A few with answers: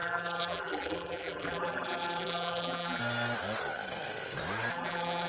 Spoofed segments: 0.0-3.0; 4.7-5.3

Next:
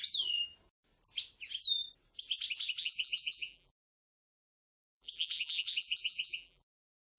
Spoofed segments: 2.8-7.2

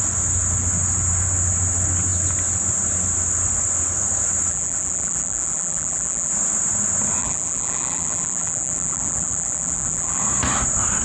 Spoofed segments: 4.5-6.3; 7.2-10.2

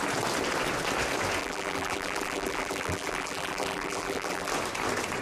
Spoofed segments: 1.4-4.5

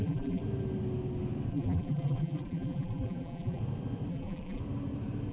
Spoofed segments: 0.0-0.4; 1.5-3.6; 4.1-4.6